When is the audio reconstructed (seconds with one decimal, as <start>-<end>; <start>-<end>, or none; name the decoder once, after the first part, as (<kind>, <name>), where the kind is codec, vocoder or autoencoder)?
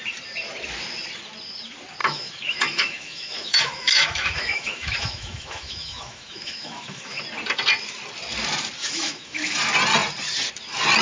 2.0-7.2 (autoencoder, DAC-VAE); 8.8-9.6